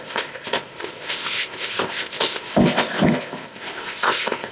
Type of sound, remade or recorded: remade